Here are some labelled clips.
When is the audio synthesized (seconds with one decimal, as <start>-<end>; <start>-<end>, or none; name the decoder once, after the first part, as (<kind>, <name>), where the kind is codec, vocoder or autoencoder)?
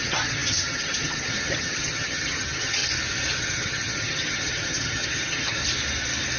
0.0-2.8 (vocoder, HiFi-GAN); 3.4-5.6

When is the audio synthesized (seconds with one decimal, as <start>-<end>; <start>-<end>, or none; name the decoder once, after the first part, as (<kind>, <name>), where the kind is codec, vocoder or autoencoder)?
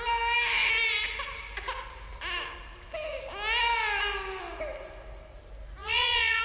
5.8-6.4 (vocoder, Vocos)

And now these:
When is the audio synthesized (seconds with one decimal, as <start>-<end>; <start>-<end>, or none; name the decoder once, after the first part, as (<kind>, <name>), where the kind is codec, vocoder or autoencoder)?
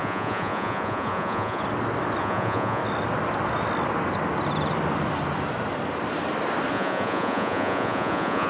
0.0-1.6 (vocoder, Vocos); 2.2-2.8; 6.7-8.5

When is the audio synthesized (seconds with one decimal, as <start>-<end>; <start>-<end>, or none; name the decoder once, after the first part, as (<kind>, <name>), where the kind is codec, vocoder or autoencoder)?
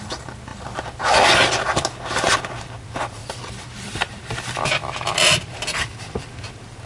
0.5-1.0 (vocoder, BigVGAN v2); 3.2-6.5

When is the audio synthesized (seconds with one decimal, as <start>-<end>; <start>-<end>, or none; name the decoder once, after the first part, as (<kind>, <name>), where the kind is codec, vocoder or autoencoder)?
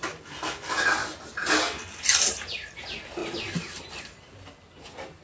1.0-2.8 (vocoder, BigVGAN v2)